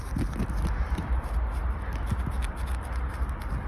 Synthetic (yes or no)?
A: no